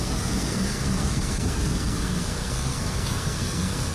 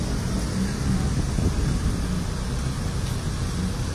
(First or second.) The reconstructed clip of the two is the first